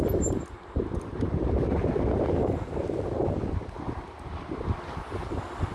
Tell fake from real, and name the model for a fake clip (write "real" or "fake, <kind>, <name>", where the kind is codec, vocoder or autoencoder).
real